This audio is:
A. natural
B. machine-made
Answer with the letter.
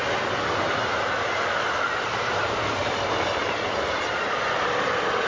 A